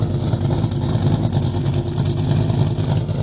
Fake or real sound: real